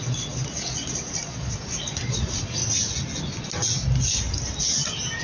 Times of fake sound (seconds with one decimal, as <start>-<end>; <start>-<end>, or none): 0.0-2.6